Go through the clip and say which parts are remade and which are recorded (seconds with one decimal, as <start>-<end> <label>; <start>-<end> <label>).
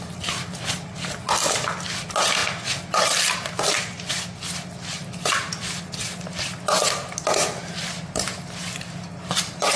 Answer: 0.0-9.8 recorded